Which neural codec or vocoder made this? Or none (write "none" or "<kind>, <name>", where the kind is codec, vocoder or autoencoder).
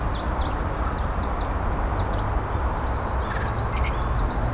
none